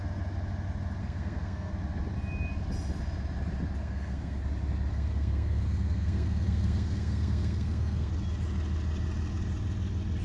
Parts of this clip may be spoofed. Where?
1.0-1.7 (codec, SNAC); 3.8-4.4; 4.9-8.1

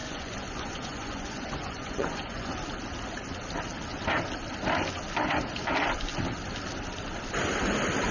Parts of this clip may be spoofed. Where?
0.0-2.5 (vocoder, Vocos)

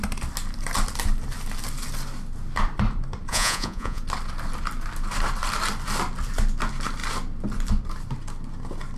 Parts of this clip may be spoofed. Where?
3.3-4.0 (vocoder, Vocos)

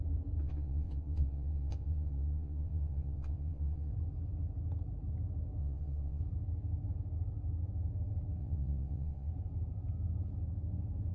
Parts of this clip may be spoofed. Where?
0.4-3.9 (vocoder, WaveNeXt); 5.6-6.2; 8.4-9.3

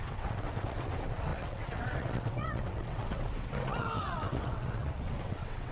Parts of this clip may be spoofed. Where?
0.0-5.7 (vocoder, WaveNeXt)

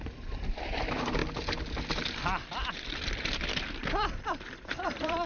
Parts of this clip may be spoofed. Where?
0.0-1.2 (vocoder, BigVGAN v2); 3.9-5.3

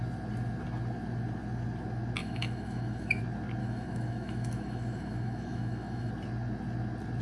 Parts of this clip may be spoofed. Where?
2.2-3.2 (autoencoder, DAC-VAE); 3.6-6.1